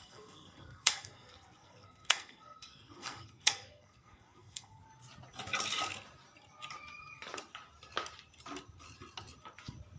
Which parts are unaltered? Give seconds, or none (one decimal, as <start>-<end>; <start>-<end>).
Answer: 4.8-10.0